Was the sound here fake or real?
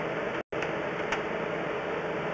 real